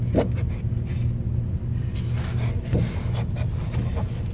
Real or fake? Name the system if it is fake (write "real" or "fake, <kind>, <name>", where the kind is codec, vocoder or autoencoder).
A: real